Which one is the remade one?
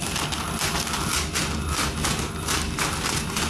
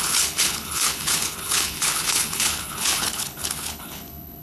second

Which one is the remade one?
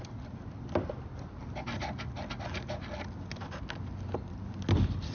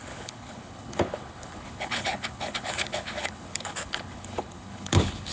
second